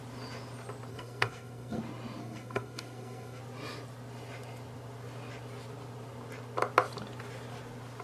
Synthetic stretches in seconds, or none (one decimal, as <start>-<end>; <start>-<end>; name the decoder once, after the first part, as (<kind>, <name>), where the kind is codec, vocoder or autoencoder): 0.9-1.8 (codec, SNAC); 2.2-3.4

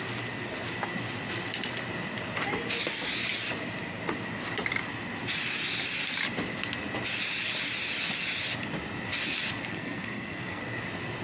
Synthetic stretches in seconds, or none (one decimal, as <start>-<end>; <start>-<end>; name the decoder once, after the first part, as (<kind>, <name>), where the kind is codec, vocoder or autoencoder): 9.7-10.6 (codec, SNAC)